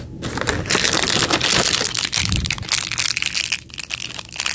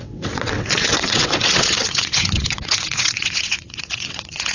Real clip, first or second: first